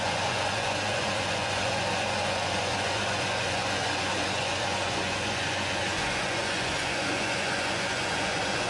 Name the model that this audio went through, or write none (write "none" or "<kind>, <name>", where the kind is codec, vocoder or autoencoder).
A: vocoder, Vocos